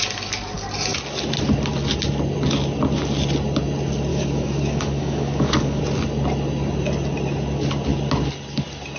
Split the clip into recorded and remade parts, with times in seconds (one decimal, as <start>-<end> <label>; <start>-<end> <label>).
0.0-4.1 recorded; 4.1-5.8 remade; 5.8-9.0 recorded